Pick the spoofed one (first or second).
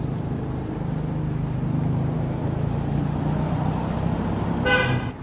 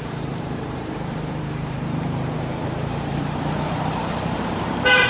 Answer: second